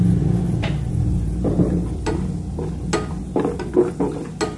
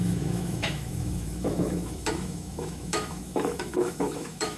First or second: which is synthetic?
second